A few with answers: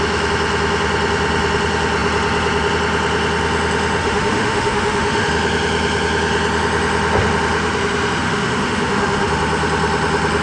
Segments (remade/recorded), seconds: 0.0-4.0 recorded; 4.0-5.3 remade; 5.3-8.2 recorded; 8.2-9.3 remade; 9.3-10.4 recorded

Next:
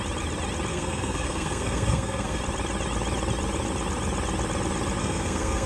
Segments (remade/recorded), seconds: 0.0-0.7 recorded; 0.7-2.4 remade; 2.4-5.0 recorded; 5.0-5.7 remade

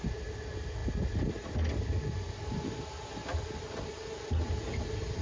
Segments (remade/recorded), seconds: 0.0-5.2 recorded

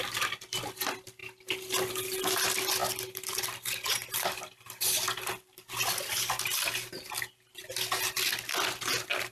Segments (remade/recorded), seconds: 0.0-1.2 recorded; 1.2-1.9 remade; 1.9-2.8 recorded; 2.8-7.1 remade; 7.1-9.3 recorded

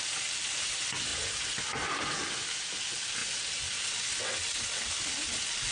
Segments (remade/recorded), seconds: 0.0-5.7 recorded